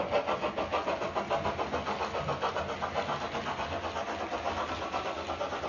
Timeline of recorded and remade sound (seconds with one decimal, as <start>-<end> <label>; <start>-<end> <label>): 0.0-5.7 recorded